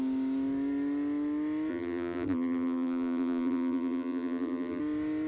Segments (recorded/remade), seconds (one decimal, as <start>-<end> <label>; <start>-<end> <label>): 0.0-1.7 recorded; 1.7-4.8 remade; 4.8-5.3 recorded